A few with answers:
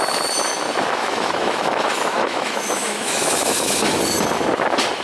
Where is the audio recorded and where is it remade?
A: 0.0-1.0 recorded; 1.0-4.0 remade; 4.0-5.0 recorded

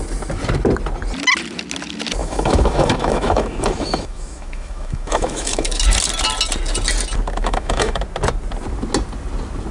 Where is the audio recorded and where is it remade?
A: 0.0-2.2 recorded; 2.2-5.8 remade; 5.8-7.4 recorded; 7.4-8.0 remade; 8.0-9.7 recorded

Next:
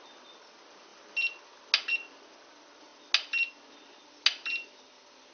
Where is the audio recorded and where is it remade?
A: 0.0-5.3 recorded

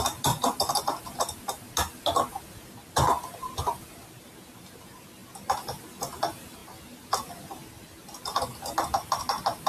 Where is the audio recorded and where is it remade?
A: 0.0-9.7 recorded

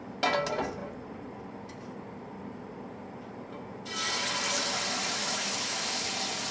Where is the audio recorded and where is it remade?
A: 0.0-5.2 recorded; 5.2-6.1 remade; 6.1-6.5 recorded

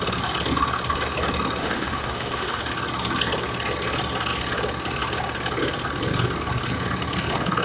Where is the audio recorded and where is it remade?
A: 0.0-1.6 recorded; 1.6-2.6 remade; 2.6-7.6 recorded